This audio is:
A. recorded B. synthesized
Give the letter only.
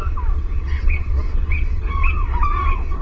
B